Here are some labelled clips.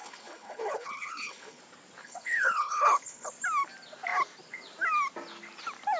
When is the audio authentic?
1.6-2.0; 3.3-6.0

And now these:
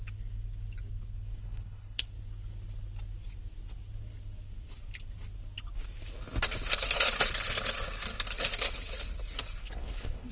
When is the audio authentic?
0.0-1.4; 2.1-9.6

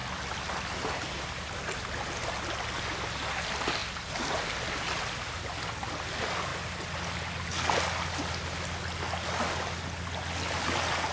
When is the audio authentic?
0.0-11.1

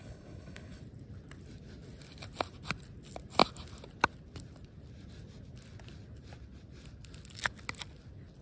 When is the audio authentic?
0.8-8.4

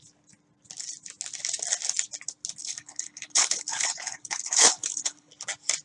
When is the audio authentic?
0.0-2.6; 5.3-5.8

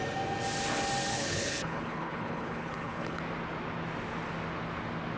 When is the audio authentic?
0.0-1.1; 3.2-5.2

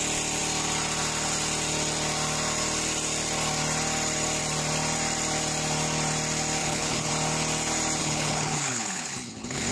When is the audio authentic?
0.0-6.6; 7.1-8.0

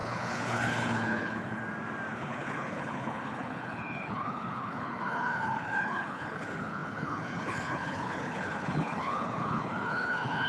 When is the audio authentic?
1.6-2.1